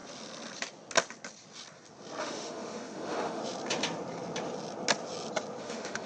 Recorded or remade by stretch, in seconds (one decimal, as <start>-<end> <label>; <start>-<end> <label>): 0.0-2.2 recorded; 2.2-3.4 remade; 3.4-5.6 recorded; 5.6-6.1 remade